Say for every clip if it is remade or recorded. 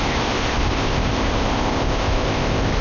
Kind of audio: remade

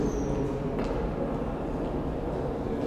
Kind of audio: recorded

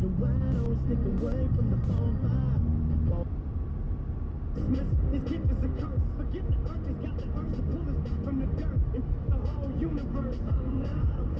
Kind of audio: recorded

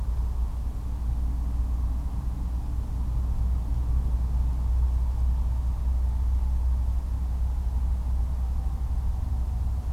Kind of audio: recorded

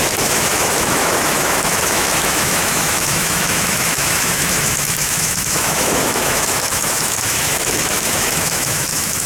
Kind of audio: remade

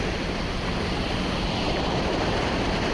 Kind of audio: recorded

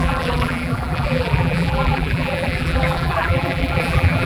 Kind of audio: remade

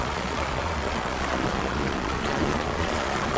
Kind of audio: remade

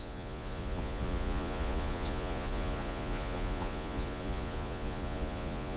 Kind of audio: remade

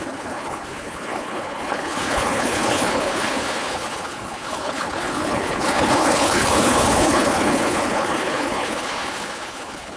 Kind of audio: remade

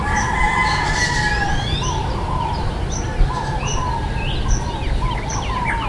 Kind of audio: recorded